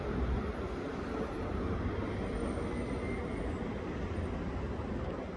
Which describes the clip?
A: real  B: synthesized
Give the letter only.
A